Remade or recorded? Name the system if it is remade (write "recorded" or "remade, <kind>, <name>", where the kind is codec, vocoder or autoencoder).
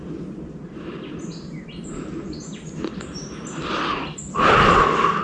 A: recorded